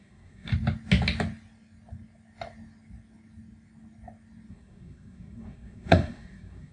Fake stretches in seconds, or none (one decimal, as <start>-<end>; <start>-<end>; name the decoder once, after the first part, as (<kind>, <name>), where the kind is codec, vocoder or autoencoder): 0.0-0.5 (codec, SNAC); 4.5-6.7